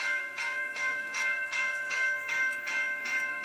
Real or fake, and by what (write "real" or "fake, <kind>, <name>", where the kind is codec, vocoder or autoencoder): fake, codec, SNAC